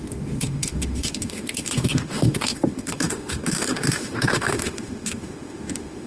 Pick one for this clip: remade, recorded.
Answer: remade